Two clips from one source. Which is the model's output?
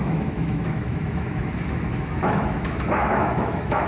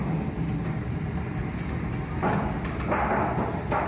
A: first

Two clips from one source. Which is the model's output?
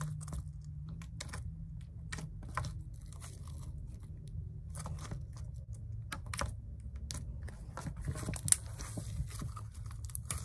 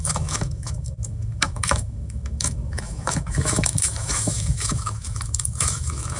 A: second